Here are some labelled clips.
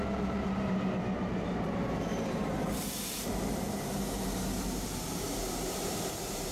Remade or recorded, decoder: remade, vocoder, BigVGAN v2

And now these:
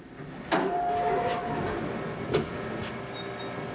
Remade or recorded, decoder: recorded